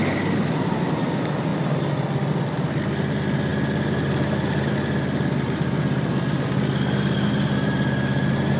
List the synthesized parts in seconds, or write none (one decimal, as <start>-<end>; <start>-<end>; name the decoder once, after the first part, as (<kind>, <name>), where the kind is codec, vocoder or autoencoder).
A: none